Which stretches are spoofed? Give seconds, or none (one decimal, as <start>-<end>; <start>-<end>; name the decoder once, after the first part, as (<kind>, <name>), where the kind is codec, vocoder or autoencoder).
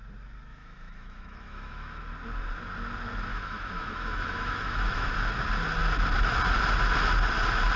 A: 0.5-2.0 (autoencoder, DAC-VAE); 3.3-5.1